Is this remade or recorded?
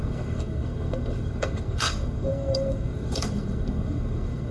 remade